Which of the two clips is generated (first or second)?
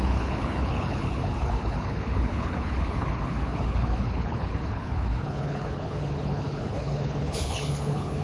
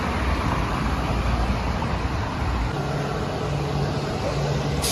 first